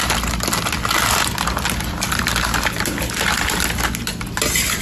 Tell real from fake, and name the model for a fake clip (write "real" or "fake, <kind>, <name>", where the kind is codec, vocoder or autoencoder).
real